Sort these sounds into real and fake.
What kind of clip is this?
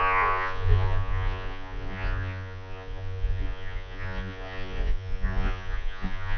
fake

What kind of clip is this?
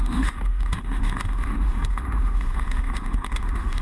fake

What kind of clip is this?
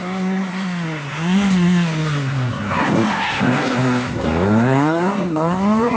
fake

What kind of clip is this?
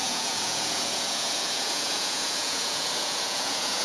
fake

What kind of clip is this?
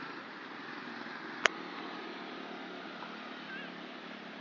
real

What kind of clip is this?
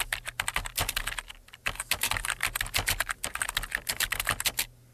real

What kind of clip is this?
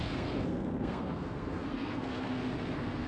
fake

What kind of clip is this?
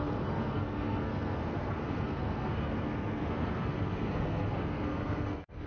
fake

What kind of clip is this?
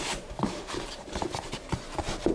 fake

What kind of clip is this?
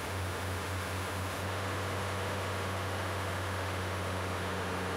fake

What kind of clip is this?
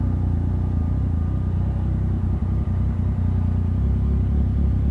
real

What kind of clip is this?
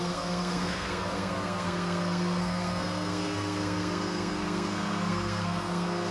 fake